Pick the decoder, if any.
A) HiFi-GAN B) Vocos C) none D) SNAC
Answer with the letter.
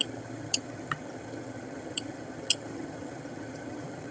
A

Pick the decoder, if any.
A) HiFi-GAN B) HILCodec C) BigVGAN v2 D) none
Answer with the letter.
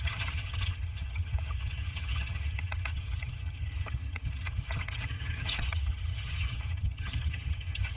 A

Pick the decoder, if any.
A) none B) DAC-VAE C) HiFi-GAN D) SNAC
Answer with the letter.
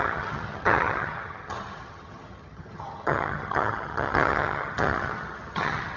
C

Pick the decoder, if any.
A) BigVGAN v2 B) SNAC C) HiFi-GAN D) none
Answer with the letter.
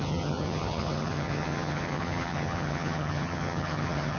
C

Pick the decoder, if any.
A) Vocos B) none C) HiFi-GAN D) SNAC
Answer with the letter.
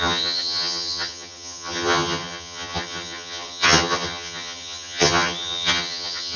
C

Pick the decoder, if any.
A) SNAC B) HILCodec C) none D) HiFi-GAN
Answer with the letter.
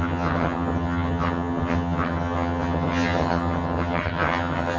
D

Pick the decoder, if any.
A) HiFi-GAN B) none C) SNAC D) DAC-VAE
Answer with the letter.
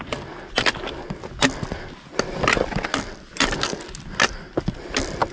B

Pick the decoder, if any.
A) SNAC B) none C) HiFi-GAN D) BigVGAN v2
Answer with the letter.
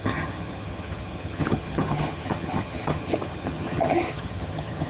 C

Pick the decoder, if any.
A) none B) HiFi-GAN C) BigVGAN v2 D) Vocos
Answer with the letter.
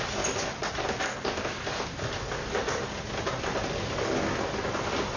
A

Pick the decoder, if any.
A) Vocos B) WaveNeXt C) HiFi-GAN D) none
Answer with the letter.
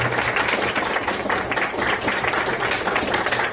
D